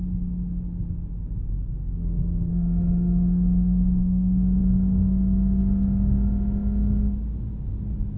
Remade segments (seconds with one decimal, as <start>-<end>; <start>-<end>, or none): 2.5-4.6